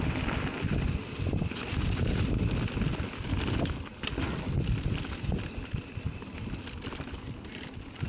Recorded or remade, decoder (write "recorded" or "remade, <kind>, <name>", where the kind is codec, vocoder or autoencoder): recorded